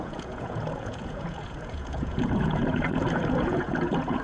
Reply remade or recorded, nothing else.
remade